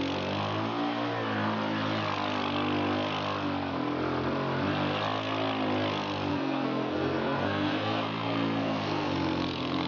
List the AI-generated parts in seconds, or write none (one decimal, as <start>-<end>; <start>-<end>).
6.3-9.9